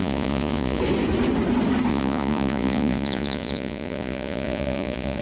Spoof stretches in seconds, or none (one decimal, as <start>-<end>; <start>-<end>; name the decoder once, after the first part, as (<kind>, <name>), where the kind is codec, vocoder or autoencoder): 0.0-0.8 (vocoder, Vocos); 1.9-5.2